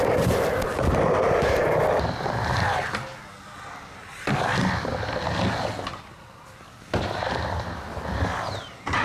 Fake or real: real